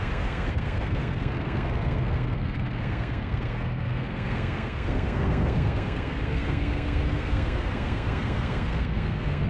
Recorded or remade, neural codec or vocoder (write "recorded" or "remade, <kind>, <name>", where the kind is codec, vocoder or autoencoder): remade, codec, SNAC